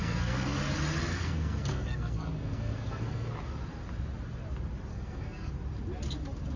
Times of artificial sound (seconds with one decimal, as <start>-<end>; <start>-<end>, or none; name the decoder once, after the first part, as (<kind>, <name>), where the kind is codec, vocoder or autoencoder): 0.0-0.6 (codec, SNAC); 1.1-3.3; 4.9-5.5